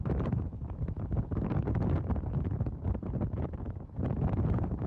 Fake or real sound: fake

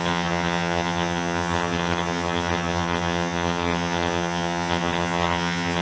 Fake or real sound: fake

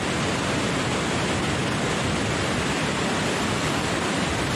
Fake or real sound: real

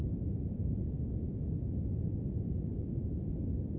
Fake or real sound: real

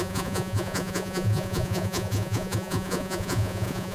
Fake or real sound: fake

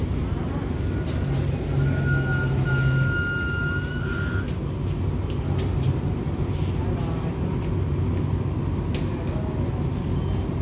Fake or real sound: real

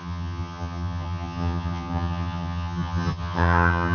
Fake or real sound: fake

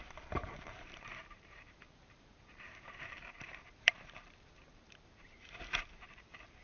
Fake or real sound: fake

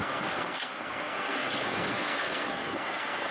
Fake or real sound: fake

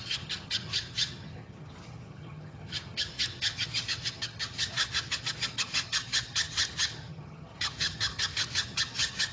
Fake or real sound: fake